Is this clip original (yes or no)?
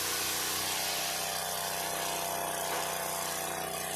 yes